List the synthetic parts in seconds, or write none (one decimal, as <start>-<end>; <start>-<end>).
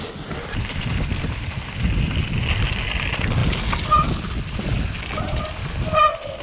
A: none